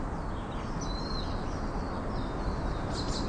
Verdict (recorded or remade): recorded